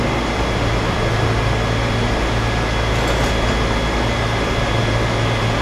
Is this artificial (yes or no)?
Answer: no